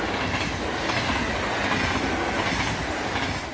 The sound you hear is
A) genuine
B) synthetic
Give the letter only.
A